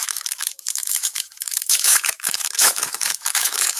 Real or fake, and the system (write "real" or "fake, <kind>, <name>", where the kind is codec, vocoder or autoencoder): fake, autoencoder, DAC-VAE